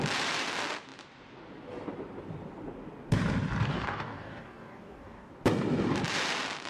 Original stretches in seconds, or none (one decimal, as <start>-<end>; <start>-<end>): 0.0-3.7; 5.3-6.7